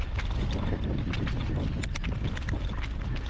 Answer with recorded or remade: recorded